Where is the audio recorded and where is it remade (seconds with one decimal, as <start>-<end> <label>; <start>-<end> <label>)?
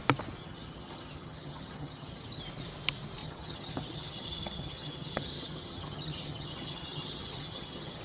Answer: 0.0-0.4 recorded; 0.4-2.4 remade; 2.4-3.2 recorded; 3.2-8.0 remade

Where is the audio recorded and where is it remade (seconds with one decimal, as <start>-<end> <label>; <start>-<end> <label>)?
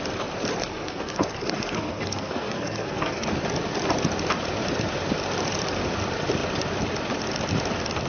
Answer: 0.0-0.6 recorded; 0.6-3.3 remade; 3.3-8.1 recorded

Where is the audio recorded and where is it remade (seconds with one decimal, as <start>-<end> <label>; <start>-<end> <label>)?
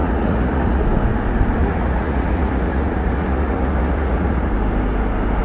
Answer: 0.0-0.8 remade; 0.8-1.6 recorded; 1.6-4.5 remade; 4.5-5.4 recorded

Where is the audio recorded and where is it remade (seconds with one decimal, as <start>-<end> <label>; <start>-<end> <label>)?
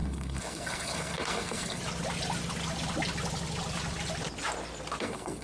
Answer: 0.0-1.8 remade; 1.8-5.0 recorded; 5.0-5.4 remade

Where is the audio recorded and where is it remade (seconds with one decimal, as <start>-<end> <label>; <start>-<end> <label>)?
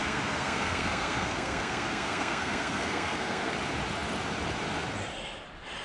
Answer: 0.0-3.5 remade; 3.5-5.8 recorded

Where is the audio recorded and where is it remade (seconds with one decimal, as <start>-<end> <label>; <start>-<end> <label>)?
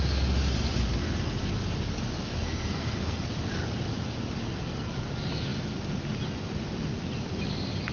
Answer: 0.0-2.4 recorded; 2.4-3.3 remade; 3.3-4.4 recorded; 4.4-4.9 remade; 4.9-7.9 recorded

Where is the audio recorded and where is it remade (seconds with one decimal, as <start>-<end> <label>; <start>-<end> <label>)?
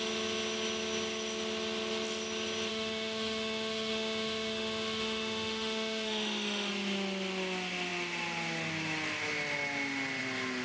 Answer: 0.0-2.7 recorded; 2.7-6.7 remade; 6.7-10.6 recorded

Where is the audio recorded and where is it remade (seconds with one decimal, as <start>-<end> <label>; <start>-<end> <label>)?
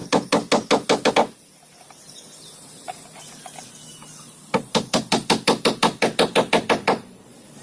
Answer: 0.0-1.1 recorded; 1.1-7.6 remade